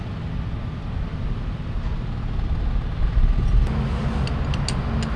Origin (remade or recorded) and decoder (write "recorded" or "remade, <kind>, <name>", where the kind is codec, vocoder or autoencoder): recorded